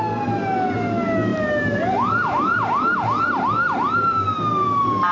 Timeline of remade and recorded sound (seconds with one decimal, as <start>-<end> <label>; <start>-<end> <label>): 0.0-1.3 recorded; 1.3-4.4 remade; 4.4-5.1 recorded

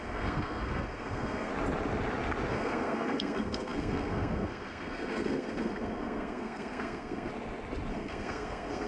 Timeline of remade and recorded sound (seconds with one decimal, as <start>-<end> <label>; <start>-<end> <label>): 0.0-1.5 remade; 1.5-2.5 recorded; 2.5-7.3 remade; 7.3-7.9 recorded; 7.9-8.9 remade

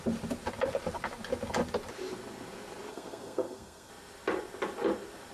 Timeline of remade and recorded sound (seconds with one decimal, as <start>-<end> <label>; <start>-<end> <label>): 0.0-2.9 recorded; 2.9-3.9 remade; 3.9-5.3 recorded

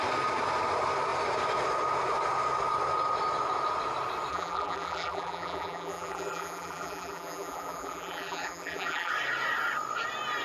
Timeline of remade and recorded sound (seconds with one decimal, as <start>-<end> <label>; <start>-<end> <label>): 0.0-4.3 recorded; 4.3-9.1 remade; 9.1-10.4 recorded

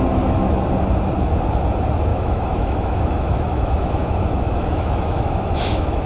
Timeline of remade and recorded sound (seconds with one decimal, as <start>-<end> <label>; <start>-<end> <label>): 0.0-2.1 recorded; 2.1-6.1 remade

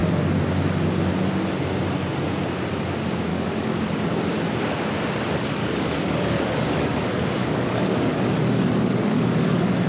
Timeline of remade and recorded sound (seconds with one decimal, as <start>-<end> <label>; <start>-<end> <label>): 0.0-3.3 recorded; 3.3-4.3 remade; 4.3-5.6 recorded; 5.6-9.9 remade

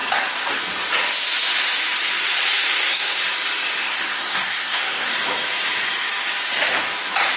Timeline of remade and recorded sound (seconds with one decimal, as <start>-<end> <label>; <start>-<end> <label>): 0.0-2.5 recorded; 2.5-3.2 remade; 3.2-3.8 recorded; 3.8-5.1 remade; 5.1-7.4 recorded